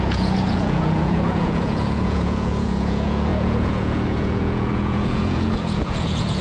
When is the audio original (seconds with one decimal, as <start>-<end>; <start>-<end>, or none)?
none